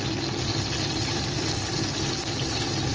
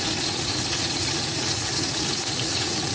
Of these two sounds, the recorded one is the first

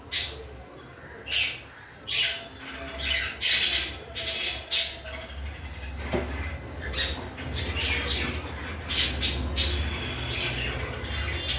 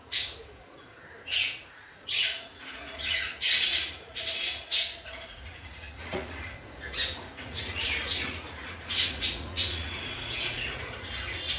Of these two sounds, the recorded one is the first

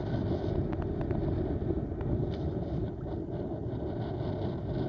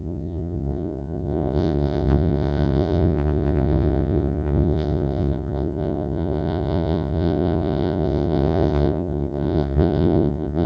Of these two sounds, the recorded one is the first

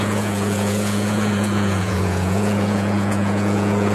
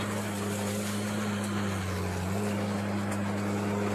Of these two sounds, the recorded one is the second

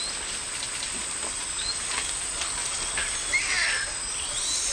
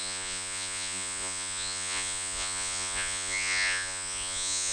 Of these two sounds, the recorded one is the first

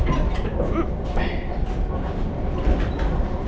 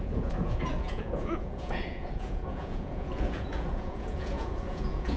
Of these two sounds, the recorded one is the first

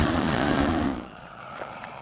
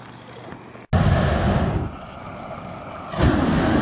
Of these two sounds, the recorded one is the second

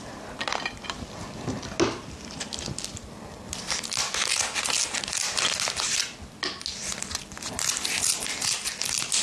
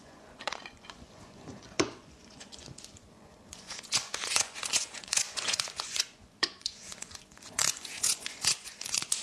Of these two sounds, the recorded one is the first